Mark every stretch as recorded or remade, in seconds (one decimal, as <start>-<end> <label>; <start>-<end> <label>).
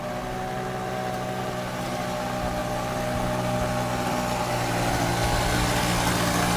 0.0-6.6 recorded